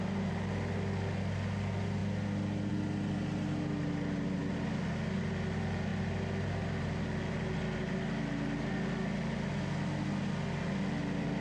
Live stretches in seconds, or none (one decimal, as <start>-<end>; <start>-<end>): 0.0-11.4